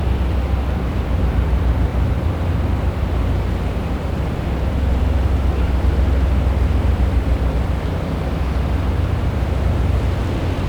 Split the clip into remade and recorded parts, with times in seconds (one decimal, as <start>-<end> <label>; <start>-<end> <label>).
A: 0.0-1.9 recorded; 1.9-4.8 remade; 4.8-10.7 recorded